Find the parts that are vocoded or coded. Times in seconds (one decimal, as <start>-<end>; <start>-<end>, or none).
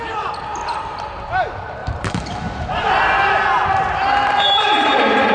0.5-1.2; 1.8-5.3